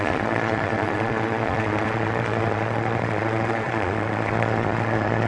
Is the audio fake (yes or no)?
yes